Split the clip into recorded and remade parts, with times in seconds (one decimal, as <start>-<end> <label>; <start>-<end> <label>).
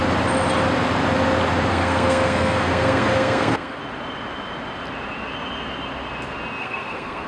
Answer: 0.0-1.7 recorded; 1.7-3.8 remade; 3.8-6.6 recorded; 6.6-7.3 remade